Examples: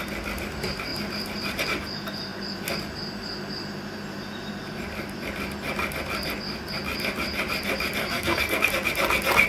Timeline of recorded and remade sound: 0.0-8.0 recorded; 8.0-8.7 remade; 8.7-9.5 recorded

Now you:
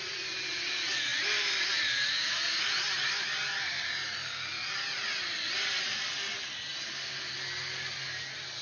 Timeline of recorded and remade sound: 0.0-8.6 recorded

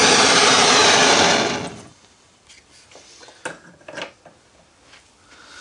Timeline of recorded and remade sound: 0.0-5.6 remade